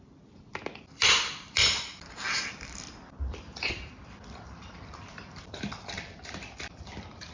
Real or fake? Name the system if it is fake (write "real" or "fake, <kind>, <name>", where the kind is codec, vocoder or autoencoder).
fake, vocoder, BigVGAN v2